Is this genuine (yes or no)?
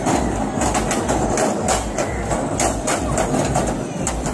yes